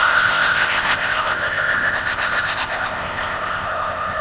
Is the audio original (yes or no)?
no